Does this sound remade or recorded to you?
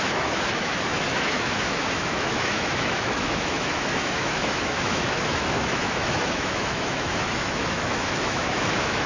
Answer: remade